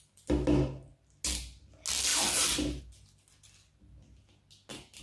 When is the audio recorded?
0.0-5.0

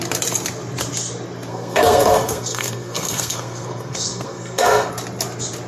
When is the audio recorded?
0.0-1.5; 4.9-5.7

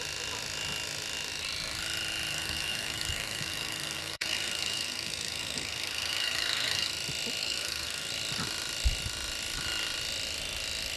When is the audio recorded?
0.0-2.3; 6.9-7.4; 8.1-11.0

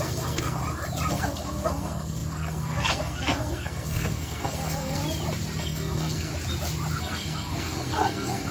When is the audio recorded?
0.6-1.1; 5.0-5.6; 6.3-7.0

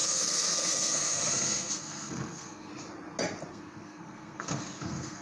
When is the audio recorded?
2.7-3.5

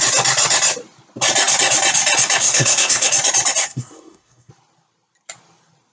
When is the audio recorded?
0.0-2.4; 3.1-3.6; 4.5-5.9

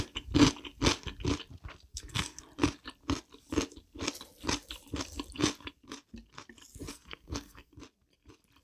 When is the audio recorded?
0.0-1.9; 2.4-6.9; 7.7-8.6